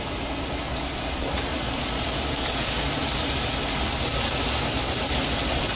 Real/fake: real